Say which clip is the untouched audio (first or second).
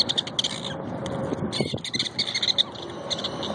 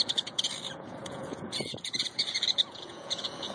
first